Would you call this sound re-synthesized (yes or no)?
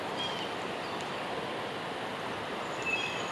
yes